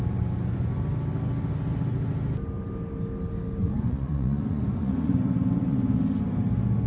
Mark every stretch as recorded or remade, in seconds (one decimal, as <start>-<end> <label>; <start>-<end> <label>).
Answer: 0.0-3.6 recorded; 3.6-6.0 remade; 6.0-6.9 recorded